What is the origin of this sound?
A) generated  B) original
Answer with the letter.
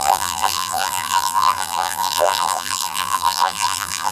A